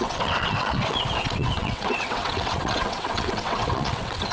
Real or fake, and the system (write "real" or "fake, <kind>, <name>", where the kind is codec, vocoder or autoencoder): fake, vocoder, WaveNeXt